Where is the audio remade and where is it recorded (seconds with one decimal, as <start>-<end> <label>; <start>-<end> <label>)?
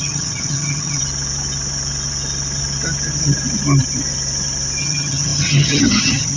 0.0-1.0 remade; 1.0-4.8 recorded; 4.8-6.4 remade